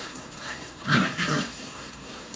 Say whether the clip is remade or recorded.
remade